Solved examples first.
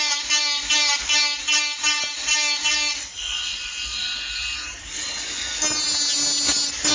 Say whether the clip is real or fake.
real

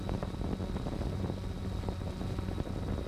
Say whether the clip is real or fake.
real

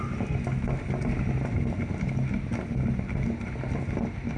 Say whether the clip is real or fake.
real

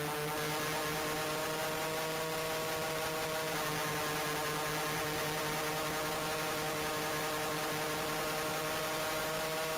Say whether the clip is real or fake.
fake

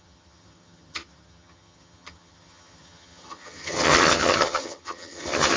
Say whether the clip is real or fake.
fake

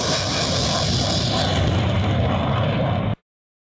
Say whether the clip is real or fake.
real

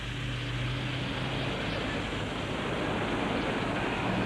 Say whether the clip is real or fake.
real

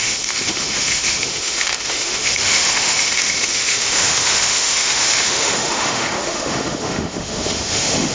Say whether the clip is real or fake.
fake